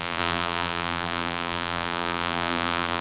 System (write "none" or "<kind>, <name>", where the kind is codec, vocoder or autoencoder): vocoder, BigVGAN v2